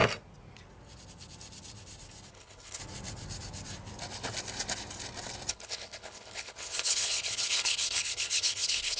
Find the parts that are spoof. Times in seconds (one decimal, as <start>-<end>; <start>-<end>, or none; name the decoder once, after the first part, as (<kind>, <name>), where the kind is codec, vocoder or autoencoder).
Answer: 2.3-2.8 (codec, HILCodec); 5.5-9.0